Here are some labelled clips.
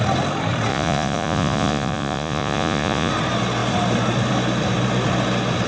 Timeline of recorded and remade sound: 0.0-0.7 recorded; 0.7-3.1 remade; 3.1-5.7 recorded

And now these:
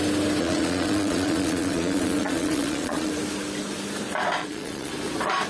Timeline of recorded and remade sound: 0.0-0.4 recorded; 0.4-3.1 remade; 3.1-4.4 recorded; 4.4-4.9 remade; 4.9-5.5 recorded

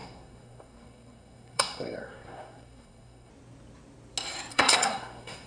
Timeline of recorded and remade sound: 0.0-3.3 remade; 3.3-4.5 recorded; 4.5-5.5 remade

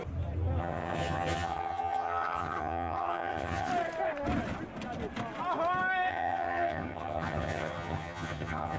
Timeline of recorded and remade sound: 0.0-0.6 recorded; 0.6-3.7 remade; 3.7-6.1 recorded; 6.1-8.8 remade

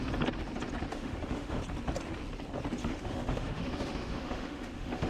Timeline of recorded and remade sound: 0.0-0.9 recorded; 0.9-1.6 remade; 1.6-2.8 recorded; 2.8-5.1 remade

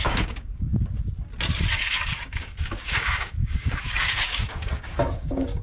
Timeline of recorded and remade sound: 0.0-0.7 remade; 0.7-1.7 recorded; 1.7-5.6 remade

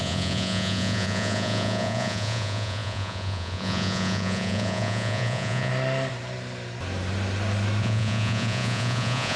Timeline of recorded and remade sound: 0.0-5.7 remade; 5.7-7.8 recorded; 7.8-9.4 remade

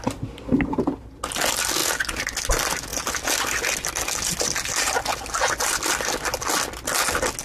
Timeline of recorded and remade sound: 0.0-7.4 recorded